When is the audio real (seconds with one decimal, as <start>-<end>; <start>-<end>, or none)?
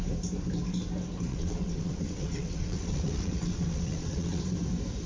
0.0-1.3; 4.4-5.1